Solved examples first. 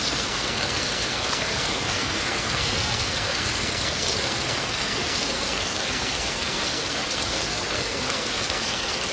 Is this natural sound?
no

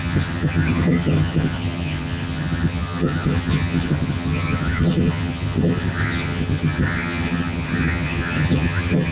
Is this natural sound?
no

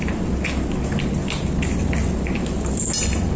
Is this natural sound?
yes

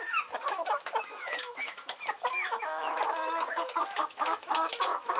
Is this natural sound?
no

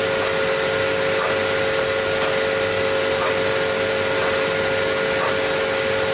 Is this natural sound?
yes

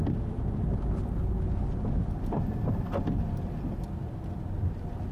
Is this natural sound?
yes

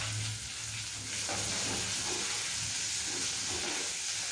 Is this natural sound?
yes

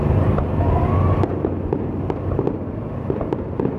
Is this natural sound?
yes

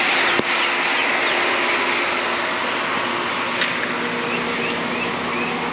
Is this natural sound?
yes